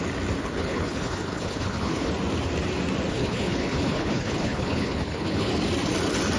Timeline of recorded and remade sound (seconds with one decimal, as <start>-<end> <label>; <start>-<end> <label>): 0.0-0.4 recorded; 0.4-2.1 remade; 2.1-3.1 recorded; 3.1-5.5 remade; 5.5-6.4 recorded